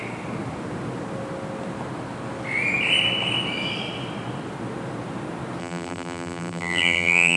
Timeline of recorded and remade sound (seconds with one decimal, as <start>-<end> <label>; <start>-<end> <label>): 0.0-5.6 recorded; 5.6-7.4 remade